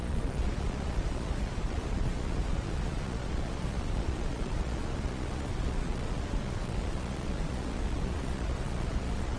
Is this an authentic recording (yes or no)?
no